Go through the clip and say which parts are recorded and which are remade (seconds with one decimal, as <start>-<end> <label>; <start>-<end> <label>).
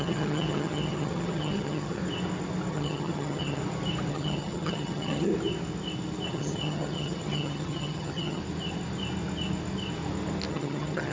0.0-2.0 remade; 2.0-2.7 recorded; 2.7-3.6 remade; 3.6-4.1 recorded; 4.1-5.3 remade; 5.3-6.3 recorded; 6.3-8.4 remade; 8.4-10.5 recorded; 10.5-11.1 remade